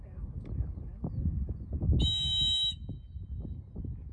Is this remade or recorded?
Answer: recorded